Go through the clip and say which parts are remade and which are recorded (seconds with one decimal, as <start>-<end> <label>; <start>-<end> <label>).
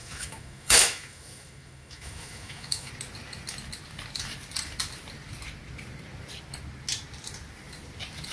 0.0-2.9 remade; 2.9-8.3 recorded